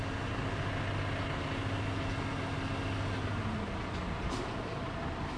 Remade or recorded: recorded